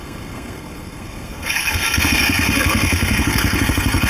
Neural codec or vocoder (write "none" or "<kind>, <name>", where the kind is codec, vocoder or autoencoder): codec, SNAC